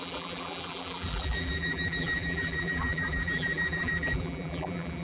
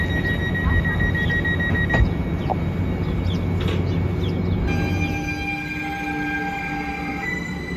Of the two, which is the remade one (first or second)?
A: first